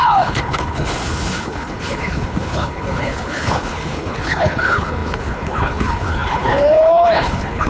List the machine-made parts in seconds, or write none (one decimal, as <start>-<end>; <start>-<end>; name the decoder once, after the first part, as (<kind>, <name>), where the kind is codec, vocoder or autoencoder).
0.0-7.7 (codec, HILCodec)